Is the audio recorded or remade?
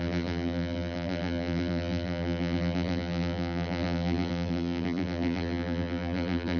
remade